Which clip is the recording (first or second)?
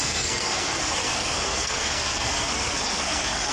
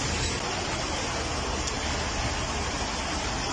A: second